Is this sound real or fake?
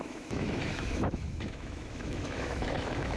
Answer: fake